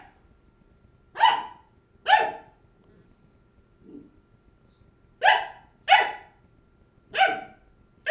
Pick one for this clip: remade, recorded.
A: recorded